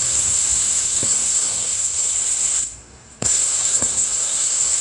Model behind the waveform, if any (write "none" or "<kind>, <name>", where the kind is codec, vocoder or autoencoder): codec, SNAC